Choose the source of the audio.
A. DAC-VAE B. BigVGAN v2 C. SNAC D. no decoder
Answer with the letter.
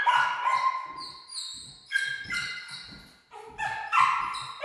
D